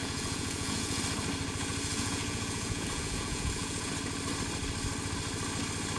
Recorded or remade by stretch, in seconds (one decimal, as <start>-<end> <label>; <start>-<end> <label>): 0.0-1.0 remade; 1.0-1.9 recorded; 1.9-3.9 remade; 3.9-6.0 recorded